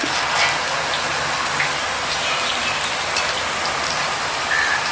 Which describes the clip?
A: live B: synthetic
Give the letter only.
A